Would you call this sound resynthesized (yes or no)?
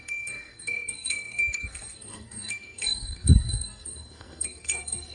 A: yes